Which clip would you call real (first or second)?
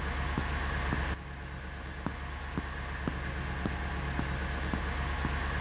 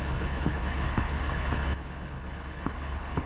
first